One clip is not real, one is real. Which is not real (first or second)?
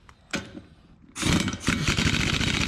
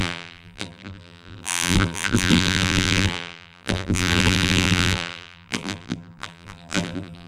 second